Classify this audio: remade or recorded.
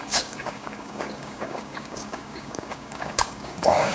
remade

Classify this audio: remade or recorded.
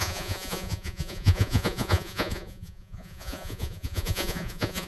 remade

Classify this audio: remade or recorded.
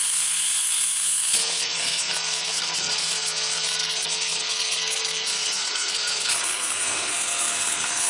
remade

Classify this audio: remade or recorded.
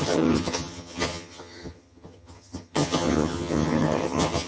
remade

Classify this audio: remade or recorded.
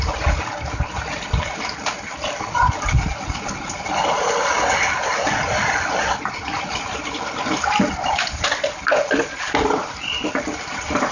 recorded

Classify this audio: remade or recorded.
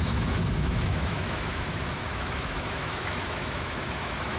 remade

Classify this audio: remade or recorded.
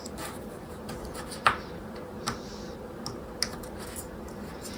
recorded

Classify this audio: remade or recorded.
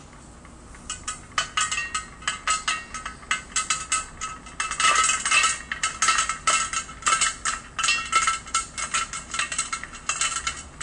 recorded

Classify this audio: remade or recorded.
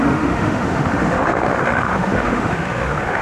remade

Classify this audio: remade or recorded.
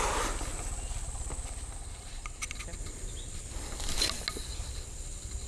recorded